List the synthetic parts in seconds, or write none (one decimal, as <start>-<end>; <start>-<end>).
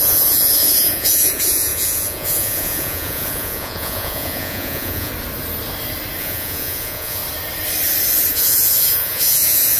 0.0-5.1; 6.2-7.2; 8.3-9.8